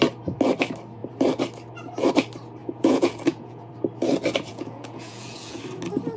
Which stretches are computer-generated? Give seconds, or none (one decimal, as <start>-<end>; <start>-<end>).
2.6-3.7; 4.5-5.6